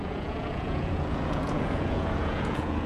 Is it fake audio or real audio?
fake